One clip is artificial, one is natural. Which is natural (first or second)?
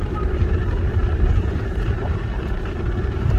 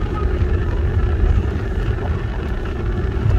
second